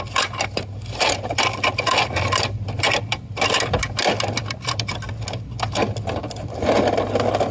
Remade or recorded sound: recorded